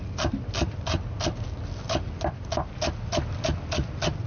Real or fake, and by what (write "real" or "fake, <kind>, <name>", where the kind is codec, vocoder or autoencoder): real